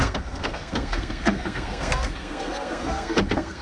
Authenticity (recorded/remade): remade